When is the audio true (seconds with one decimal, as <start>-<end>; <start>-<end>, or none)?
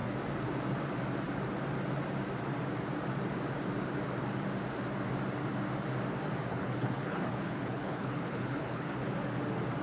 0.0-6.5; 9.1-9.8